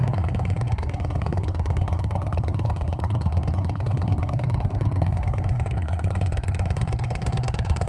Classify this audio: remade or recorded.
remade